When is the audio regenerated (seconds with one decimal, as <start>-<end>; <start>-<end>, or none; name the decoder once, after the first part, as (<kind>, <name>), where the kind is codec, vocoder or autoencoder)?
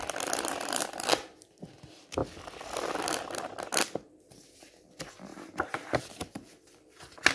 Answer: 0.0-2.2 (vocoder, BigVGAN v2); 4.6-5.3; 6.0-7.3